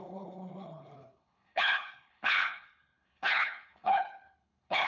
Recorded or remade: remade